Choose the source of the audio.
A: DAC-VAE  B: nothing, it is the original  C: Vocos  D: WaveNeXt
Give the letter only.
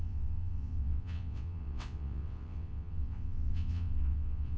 D